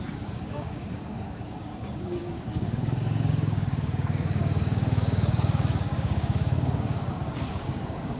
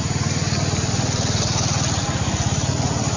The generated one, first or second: first